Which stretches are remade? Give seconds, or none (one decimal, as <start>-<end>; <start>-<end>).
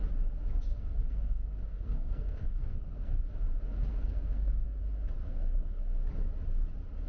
0.7-3.2; 3.9-4.8; 5.2-5.8